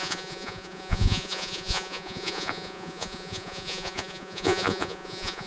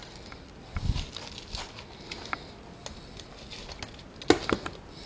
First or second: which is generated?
first